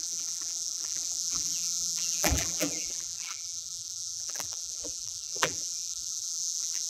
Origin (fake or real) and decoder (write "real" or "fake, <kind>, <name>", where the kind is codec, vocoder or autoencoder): fake, vocoder, BigVGAN v2